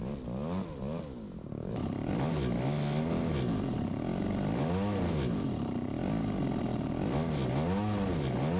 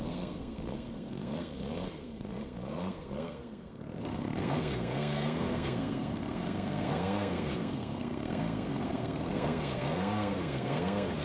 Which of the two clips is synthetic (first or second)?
second